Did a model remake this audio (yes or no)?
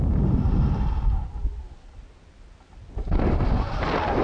no